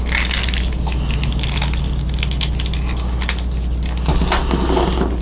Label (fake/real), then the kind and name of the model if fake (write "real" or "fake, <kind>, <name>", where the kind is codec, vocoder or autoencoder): real